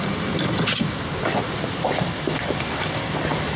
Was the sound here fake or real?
real